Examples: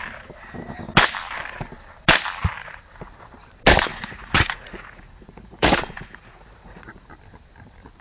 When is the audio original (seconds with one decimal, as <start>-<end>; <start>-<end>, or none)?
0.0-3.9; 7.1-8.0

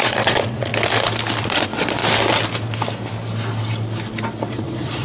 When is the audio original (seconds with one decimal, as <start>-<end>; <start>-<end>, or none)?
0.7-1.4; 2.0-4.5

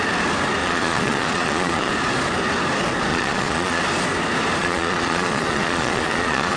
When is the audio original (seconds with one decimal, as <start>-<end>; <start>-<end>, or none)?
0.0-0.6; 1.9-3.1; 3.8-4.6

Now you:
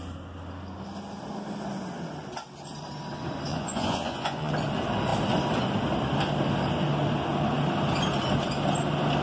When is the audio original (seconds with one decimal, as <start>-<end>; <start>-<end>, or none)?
0.0-3.5; 4.5-9.2

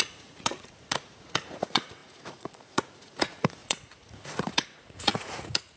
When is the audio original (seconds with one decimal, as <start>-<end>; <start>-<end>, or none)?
none

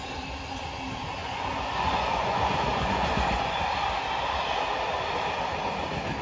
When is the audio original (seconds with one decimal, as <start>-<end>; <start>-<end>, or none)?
0.0-1.2; 3.7-6.2